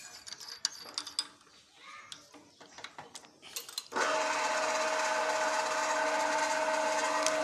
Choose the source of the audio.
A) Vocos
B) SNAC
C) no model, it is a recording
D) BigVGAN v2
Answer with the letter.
C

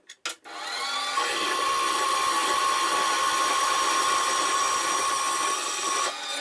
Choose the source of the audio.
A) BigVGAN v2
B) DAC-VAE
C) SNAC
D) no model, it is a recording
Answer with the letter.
D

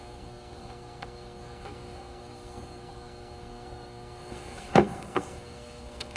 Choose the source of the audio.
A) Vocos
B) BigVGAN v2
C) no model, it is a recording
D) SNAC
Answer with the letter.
D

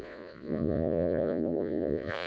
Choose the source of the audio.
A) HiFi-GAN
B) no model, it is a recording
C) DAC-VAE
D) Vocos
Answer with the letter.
D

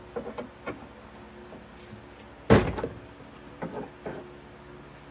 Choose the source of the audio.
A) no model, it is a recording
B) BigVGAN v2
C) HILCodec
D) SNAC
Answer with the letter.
A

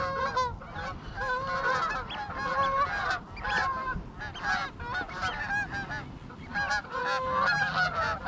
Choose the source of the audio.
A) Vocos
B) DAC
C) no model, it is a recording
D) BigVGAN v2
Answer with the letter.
C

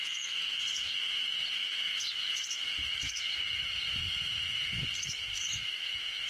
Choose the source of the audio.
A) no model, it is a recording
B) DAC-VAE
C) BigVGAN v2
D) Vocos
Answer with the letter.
B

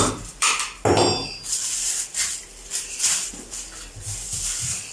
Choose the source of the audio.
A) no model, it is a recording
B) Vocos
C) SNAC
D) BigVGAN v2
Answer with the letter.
D